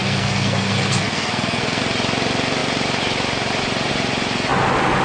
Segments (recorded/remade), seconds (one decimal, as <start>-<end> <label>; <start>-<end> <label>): 0.0-1.8 remade; 1.8-5.0 recorded

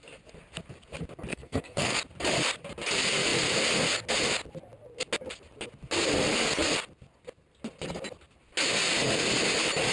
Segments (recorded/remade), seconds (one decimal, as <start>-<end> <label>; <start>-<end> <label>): 0.0-1.3 recorded; 1.3-2.0 remade; 2.0-9.9 recorded

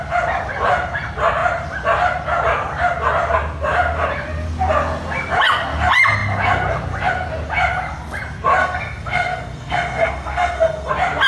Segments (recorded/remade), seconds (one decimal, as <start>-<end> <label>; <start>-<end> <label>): 0.0-8.6 recorded; 8.6-10.9 remade; 10.9-11.3 recorded

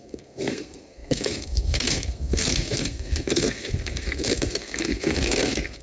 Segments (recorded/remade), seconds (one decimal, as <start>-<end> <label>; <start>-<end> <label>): 0.0-5.8 remade

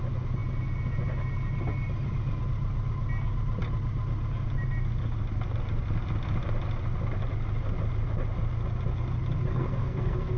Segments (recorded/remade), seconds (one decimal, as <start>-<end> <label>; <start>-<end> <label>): 0.0-9.5 recorded; 9.5-10.4 remade